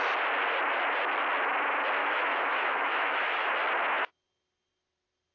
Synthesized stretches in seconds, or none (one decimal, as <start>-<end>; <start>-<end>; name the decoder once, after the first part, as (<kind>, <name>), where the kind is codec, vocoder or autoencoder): 2.0-3.5 (autoencoder, DAC-VAE)